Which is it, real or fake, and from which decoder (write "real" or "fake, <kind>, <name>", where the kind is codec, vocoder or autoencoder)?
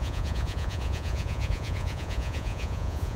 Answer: fake, vocoder, Vocos